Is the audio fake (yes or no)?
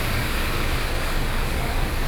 yes